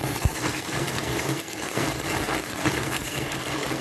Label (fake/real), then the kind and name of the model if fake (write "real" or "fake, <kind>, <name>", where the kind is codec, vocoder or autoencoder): fake, codec, SNAC